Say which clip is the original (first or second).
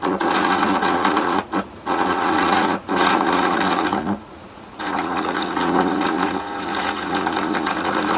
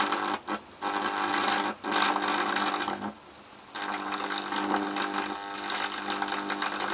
second